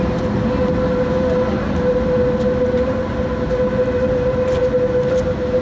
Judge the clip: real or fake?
real